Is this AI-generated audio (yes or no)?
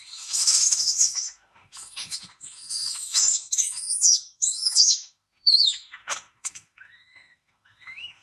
yes